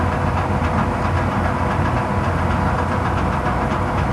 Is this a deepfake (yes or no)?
no